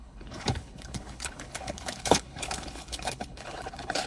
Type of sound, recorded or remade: remade